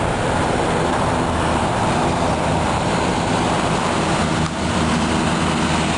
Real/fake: fake